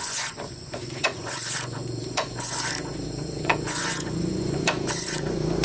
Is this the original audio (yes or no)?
no